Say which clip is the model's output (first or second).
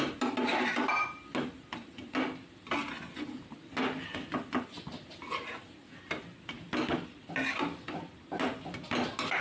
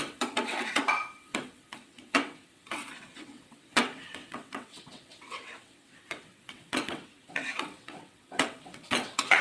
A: second